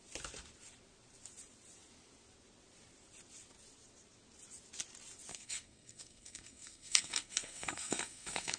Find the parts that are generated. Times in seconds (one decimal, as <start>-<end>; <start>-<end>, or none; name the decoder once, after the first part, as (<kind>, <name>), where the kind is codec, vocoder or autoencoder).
5.3-8.6 (codec, SNAC)